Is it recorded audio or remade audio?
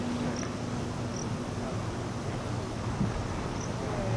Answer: recorded